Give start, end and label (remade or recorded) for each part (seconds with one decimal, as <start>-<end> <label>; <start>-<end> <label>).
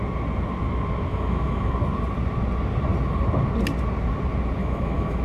0.0-1.1 recorded; 1.1-1.7 remade; 1.7-4.6 recorded; 4.6-5.2 remade